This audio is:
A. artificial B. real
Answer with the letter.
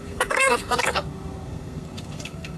A